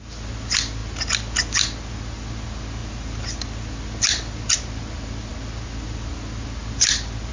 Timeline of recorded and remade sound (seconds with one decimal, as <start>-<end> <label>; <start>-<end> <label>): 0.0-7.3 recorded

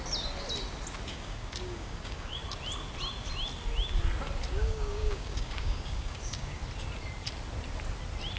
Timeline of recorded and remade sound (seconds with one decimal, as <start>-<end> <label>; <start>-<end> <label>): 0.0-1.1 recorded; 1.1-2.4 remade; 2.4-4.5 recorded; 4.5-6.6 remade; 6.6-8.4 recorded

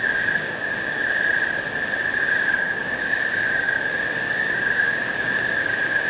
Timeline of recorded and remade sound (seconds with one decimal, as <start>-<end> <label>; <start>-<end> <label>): 0.0-1.2 remade; 1.2-2.2 recorded; 2.2-6.1 remade

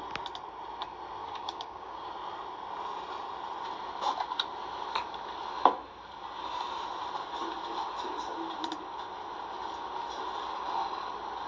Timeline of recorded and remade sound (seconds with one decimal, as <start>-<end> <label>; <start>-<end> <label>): 0.0-1.2 recorded; 1.2-2.1 remade; 2.1-11.5 recorded

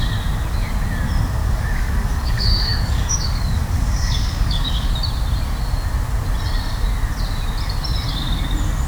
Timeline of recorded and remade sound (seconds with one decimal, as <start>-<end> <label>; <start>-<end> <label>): 0.0-1.4 recorded; 1.4-4.9 remade; 4.9-8.9 recorded

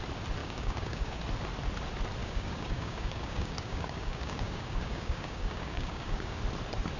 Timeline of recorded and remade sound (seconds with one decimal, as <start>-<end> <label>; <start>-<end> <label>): 0.0-0.4 recorded; 0.4-1.2 remade; 1.2-2.2 recorded; 2.2-6.4 remade; 6.4-7.0 recorded

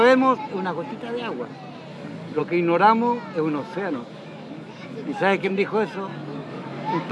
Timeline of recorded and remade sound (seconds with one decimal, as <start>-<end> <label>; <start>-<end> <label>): 0.0-1.9 recorded; 1.9-2.4 remade; 2.4-3.6 recorded; 3.6-5.5 remade; 5.5-6.1 recorded; 6.1-7.1 remade